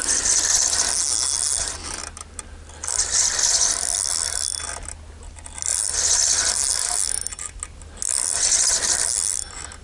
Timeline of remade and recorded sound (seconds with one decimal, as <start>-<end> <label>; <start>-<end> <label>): 0.0-9.8 recorded